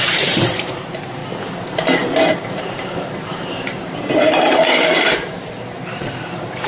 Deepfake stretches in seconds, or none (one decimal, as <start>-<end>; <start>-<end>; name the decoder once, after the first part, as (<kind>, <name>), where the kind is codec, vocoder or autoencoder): 0.0-1.2 (vocoder, BigVGAN v2); 2.3-6.7